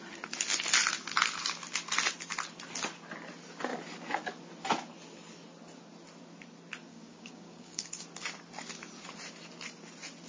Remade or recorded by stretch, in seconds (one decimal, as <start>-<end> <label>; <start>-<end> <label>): 0.0-6.9 recorded; 6.9-8.0 remade; 8.0-10.3 recorded